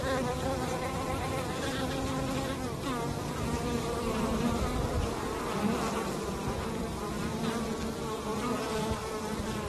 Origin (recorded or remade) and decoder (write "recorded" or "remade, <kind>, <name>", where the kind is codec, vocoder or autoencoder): recorded